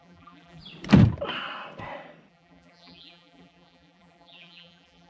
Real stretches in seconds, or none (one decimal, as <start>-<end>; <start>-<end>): 0.6-2.3